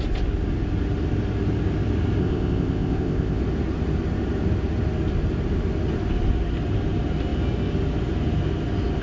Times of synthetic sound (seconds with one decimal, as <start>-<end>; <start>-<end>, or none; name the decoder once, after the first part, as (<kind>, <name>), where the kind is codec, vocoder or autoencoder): 2.2-3.4 (codec, ZipCodec)